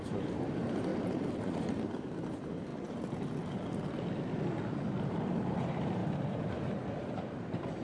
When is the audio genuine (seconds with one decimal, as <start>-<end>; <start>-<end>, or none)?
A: 0.9-1.7; 2.7-5.1

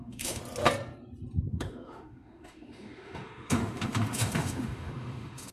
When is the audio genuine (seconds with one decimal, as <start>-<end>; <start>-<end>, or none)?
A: 0.4-1.5

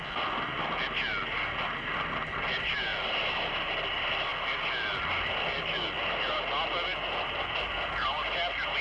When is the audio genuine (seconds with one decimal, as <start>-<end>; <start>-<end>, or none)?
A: 0.0-8.8

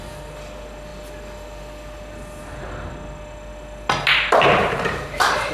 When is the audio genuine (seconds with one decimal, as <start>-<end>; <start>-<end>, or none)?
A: 0.0-4.6

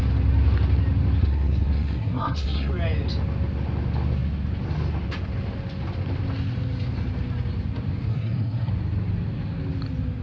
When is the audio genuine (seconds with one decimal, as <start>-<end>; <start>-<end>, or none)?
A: 0.0-1.2; 2.7-8.1; 8.7-10.2

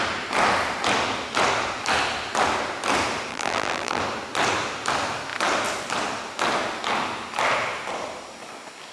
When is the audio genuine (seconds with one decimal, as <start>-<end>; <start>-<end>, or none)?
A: 0.0-3.3; 4.0-8.9

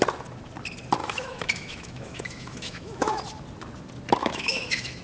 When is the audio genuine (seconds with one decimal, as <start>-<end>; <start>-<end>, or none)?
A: 0.0-1.0; 3.2-4.2

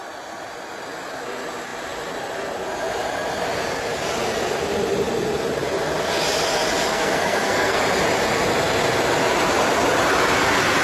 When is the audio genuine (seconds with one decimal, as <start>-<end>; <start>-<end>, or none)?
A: 0.0-6.9; 7.8-10.8